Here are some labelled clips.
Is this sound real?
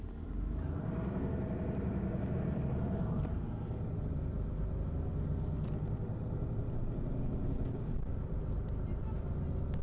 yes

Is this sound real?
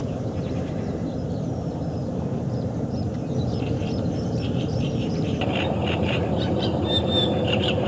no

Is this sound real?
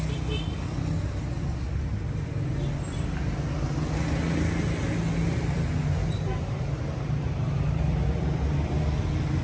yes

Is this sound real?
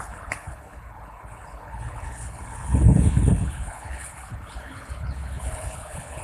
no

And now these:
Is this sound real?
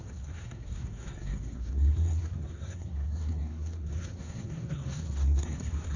no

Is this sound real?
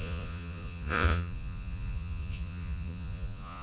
no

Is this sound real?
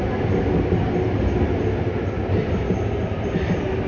yes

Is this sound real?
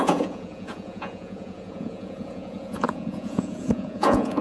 no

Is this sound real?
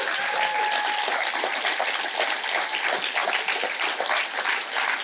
yes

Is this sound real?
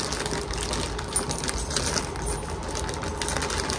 yes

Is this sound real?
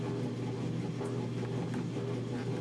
yes